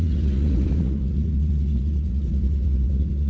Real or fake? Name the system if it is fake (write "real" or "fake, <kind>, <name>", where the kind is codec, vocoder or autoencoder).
fake, vocoder, Vocos